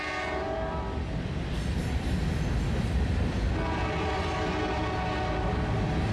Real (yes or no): yes